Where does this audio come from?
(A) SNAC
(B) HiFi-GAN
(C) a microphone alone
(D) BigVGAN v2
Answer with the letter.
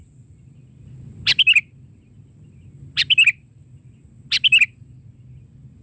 C